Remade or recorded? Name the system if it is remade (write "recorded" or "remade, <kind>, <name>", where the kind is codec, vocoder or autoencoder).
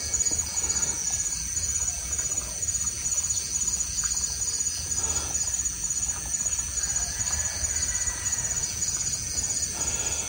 remade, vocoder, Vocos